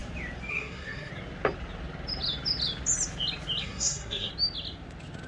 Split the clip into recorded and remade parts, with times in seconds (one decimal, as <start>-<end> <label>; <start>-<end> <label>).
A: 0.0-0.5 recorded; 0.5-1.1 remade; 1.1-3.6 recorded; 3.6-4.3 remade; 4.3-5.3 recorded